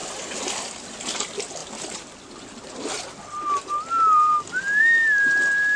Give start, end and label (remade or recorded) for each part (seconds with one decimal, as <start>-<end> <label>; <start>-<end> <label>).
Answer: 0.0-5.8 recorded